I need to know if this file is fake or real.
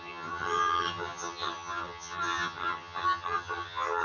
fake